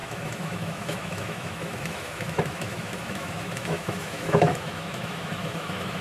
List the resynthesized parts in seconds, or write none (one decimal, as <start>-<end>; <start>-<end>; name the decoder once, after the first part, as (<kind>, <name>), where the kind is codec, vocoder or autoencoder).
0.0-6.0 (autoencoder, DAC-VAE)